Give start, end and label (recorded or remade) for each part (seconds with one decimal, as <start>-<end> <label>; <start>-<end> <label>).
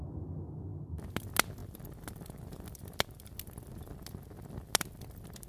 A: 0.0-5.5 recorded